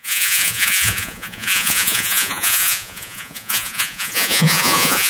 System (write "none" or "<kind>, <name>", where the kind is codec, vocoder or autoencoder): vocoder, Vocos